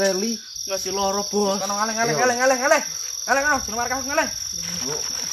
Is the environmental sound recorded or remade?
recorded